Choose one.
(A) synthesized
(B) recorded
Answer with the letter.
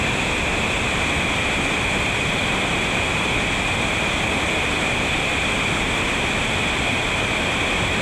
B